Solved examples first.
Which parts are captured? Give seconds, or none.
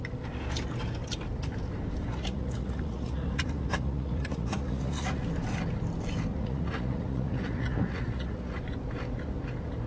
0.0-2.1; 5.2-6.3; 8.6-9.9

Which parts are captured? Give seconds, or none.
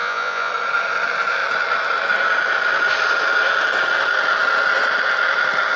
0.5-5.8